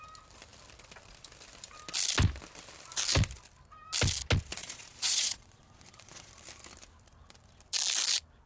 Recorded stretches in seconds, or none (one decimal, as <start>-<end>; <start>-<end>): 0.0-4.6; 6.3-8.5